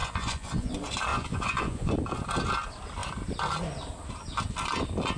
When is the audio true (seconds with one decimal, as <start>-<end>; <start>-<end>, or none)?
0.7-1.1; 1.9-5.2